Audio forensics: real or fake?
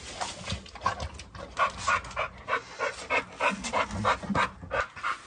real